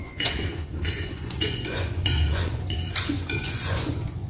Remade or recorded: remade